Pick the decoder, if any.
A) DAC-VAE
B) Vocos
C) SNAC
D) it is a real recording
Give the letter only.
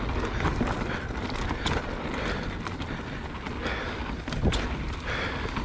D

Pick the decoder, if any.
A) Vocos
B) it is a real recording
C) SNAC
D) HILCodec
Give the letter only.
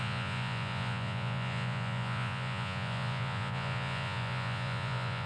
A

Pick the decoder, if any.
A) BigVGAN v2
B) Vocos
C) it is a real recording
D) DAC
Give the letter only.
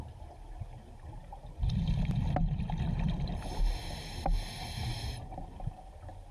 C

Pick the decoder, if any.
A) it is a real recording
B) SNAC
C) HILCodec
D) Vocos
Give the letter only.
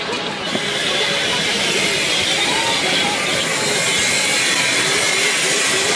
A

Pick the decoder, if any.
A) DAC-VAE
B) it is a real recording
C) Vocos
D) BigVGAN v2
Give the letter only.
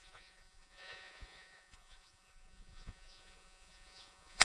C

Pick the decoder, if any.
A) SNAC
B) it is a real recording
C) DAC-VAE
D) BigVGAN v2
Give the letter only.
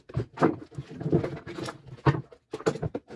B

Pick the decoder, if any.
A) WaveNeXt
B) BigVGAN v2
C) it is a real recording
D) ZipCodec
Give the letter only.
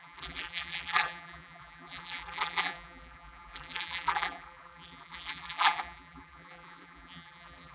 B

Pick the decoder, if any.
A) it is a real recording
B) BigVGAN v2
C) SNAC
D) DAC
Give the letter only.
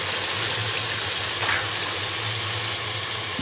A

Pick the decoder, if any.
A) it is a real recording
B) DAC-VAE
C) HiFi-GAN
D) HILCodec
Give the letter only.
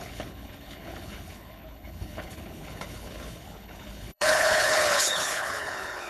D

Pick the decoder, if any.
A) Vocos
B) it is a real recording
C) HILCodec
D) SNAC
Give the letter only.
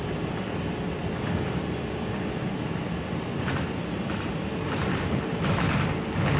B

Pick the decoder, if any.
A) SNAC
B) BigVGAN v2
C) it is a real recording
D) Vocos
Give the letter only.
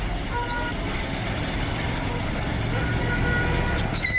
C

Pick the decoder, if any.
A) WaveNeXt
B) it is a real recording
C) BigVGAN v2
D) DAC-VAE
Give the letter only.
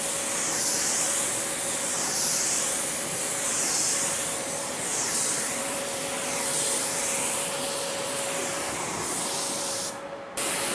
C